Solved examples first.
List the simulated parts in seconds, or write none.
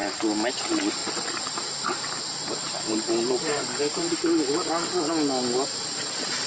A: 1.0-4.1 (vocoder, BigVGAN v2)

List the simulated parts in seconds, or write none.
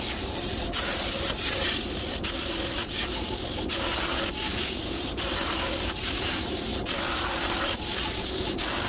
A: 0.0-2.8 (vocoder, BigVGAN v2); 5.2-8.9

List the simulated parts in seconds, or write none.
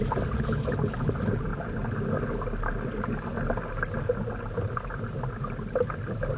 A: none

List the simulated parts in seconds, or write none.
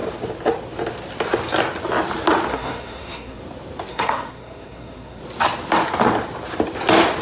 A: 2.5-3.4 (codec, SNAC); 3.9-5.2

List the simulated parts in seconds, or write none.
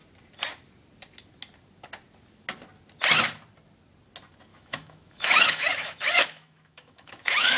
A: 4.5-7.6 (autoencoder, DAC-VAE)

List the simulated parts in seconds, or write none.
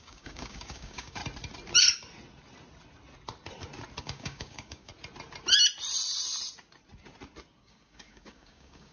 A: 0.0-1.2 (codec, DAC); 4.0-4.9; 7.6-8.9